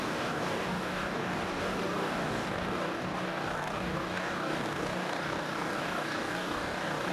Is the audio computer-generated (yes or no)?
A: yes